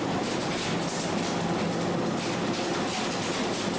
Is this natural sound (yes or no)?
yes